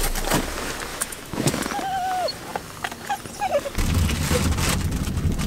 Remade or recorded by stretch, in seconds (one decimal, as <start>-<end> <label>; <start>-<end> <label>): 0.0-0.9 recorded; 0.9-1.5 remade; 1.5-5.5 recorded